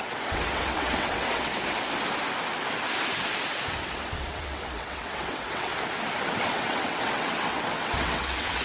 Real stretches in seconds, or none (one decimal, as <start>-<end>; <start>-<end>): 1.5-3.7; 5.7-6.4